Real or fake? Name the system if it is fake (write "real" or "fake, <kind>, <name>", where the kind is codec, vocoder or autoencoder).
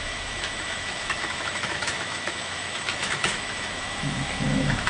fake, autoencoder, DAC-VAE